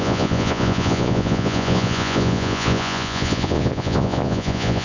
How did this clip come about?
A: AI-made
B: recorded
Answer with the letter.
A